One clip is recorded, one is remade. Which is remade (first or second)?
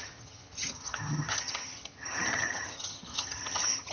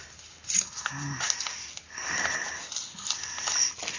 first